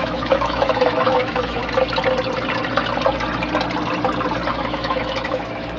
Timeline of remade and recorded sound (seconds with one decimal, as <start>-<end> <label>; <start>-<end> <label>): 0.0-1.6 remade; 1.6-4.5 recorded; 4.5-5.8 remade